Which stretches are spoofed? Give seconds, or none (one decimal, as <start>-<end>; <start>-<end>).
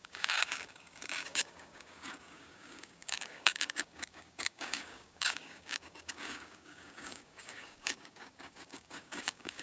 0.0-9.6